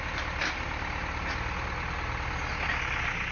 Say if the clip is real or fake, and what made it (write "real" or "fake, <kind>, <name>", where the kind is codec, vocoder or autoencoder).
real